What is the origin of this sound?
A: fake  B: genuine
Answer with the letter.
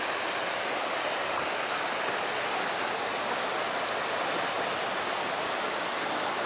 B